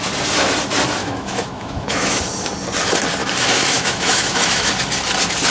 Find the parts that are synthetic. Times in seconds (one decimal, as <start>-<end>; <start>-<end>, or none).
1.0-2.2; 3.2-4.7